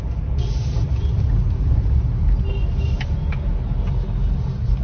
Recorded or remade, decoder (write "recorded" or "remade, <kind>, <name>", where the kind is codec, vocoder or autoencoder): recorded